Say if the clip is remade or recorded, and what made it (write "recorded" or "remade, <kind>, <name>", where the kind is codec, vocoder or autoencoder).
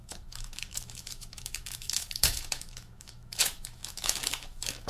remade, autoencoder, DAC-VAE